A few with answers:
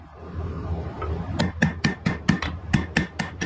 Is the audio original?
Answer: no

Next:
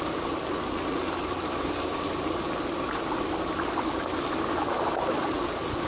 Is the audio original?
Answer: yes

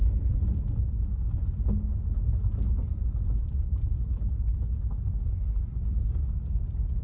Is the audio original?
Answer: yes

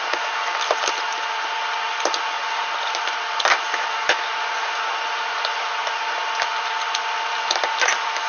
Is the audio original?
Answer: yes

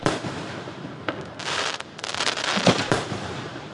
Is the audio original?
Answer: no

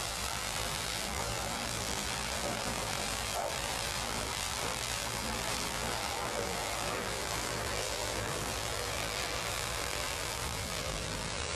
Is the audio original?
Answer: no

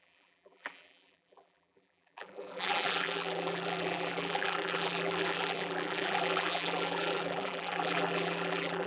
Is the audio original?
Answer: no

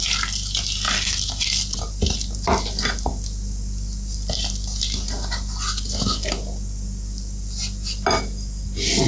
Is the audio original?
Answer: yes